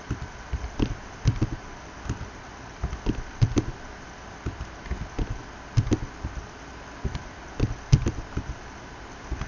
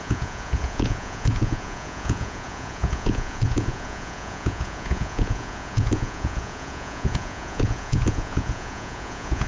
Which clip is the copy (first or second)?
second